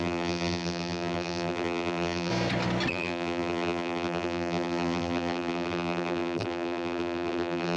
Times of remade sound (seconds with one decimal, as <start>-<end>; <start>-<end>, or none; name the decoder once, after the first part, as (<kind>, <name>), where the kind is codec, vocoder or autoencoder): 0.0-2.3 (vocoder, BigVGAN v2); 2.9-7.8